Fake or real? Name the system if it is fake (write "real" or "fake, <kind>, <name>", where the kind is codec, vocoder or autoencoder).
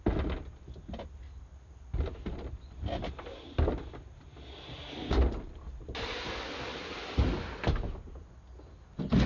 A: real